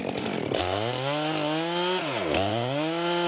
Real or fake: real